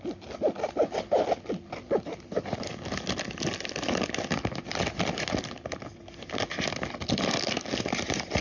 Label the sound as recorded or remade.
recorded